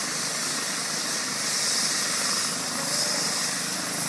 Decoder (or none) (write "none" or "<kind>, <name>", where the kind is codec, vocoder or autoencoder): none